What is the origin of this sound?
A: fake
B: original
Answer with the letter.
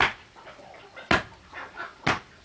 B